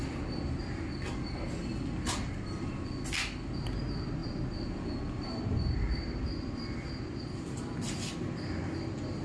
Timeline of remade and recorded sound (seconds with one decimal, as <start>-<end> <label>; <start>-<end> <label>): 0.0-9.2 recorded